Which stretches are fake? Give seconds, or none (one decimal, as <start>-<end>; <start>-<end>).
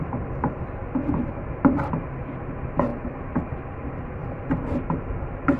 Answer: 2.9-3.5